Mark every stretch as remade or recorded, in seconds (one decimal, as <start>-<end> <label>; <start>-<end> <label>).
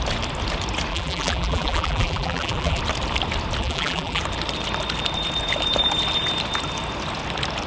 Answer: 0.0-0.9 recorded; 0.9-2.8 remade; 2.8-3.6 recorded; 3.6-4.2 remade; 4.2-7.7 recorded